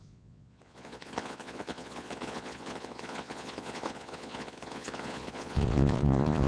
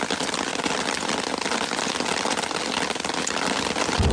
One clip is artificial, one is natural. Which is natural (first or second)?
second